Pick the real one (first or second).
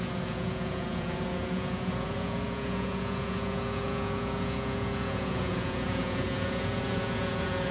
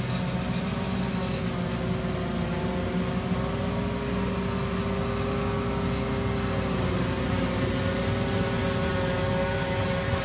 second